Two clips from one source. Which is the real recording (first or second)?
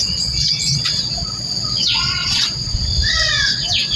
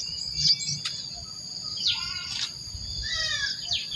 second